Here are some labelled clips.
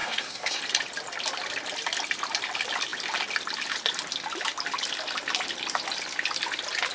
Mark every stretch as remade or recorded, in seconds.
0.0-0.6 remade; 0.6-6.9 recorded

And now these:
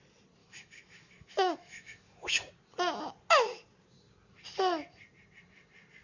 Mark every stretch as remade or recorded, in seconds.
0.0-0.4 recorded; 0.4-2.5 remade; 2.5-6.0 recorded